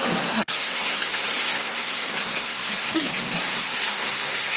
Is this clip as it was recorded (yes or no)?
no